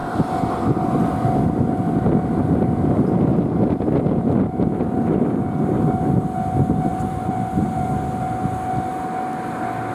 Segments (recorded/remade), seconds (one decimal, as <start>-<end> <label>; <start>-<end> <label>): 0.0-6.9 recorded; 6.9-7.9 remade; 7.9-9.9 recorded